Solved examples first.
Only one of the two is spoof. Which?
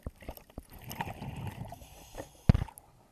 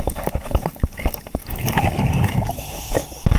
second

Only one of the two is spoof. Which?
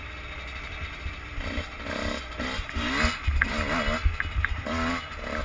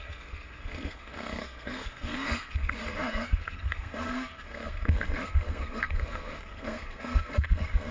second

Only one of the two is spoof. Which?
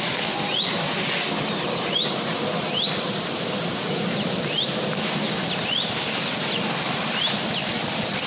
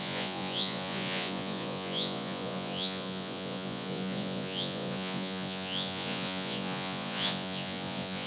second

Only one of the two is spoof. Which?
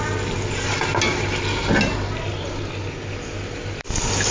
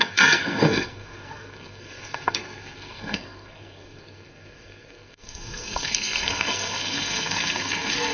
second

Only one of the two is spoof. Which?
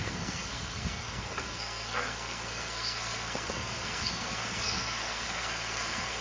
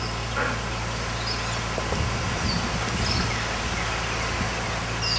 first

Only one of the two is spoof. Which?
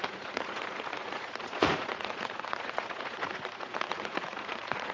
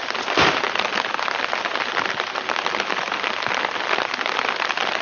first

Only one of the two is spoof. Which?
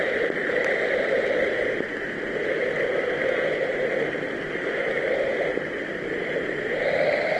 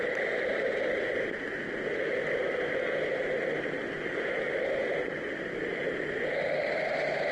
first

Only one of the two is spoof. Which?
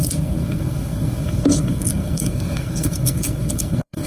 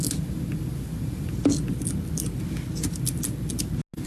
first